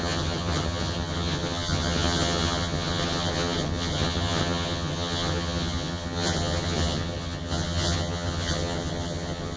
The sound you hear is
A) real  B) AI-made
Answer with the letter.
B